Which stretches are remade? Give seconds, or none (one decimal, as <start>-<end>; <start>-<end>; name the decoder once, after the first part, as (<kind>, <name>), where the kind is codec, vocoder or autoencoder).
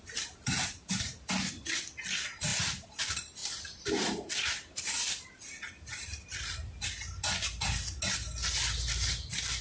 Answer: none